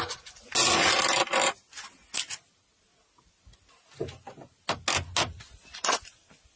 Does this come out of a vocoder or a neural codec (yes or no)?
no